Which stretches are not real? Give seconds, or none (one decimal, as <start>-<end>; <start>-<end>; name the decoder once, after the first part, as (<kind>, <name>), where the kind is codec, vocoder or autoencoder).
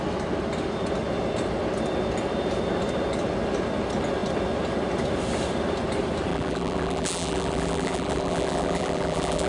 6.3-9.5 (vocoder, BigVGAN v2)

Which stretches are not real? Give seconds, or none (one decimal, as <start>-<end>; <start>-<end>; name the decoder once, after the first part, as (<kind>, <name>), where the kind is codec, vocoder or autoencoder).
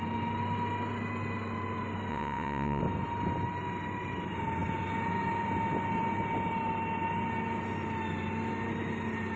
2.1-2.8 (vocoder, WaveNeXt)